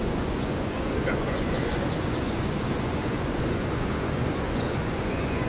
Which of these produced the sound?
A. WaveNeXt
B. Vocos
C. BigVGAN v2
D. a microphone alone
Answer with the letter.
B